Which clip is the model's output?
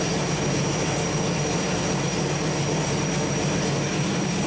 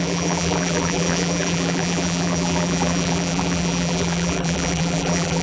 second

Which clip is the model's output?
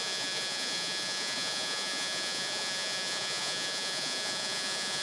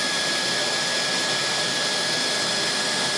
first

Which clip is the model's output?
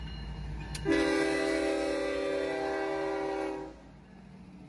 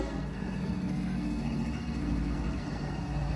second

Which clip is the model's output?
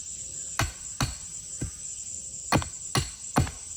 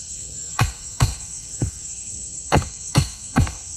second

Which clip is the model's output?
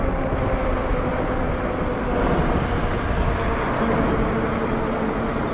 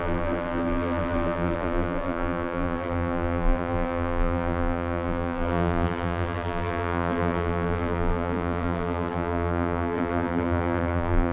second